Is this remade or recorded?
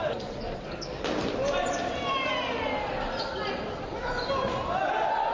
recorded